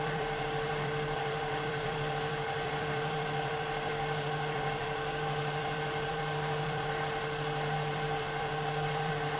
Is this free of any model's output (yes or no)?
no